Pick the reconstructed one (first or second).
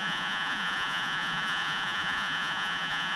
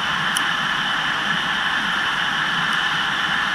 first